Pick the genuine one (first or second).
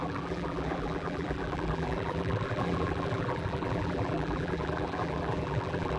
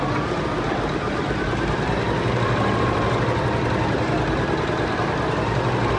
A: second